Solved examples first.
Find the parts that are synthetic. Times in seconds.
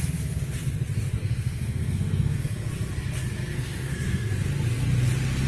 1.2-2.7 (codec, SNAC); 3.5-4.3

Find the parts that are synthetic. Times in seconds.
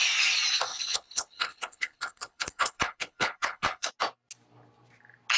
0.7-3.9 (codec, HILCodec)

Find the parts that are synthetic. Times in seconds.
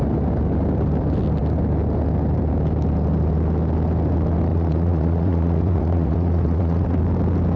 4.5-7.0 (vocoder, Vocos)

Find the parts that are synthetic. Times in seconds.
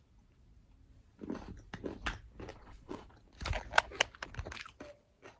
2.5-3.1 (vocoder, Vocos)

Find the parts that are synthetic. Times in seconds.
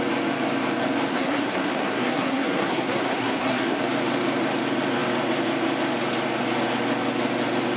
1.1-3.8 (codec, SNAC)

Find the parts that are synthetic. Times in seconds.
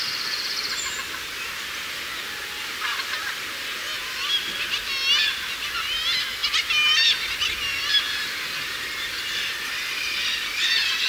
none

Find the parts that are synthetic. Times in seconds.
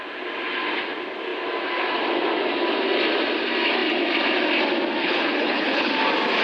5.0-5.9 (codec, HILCodec)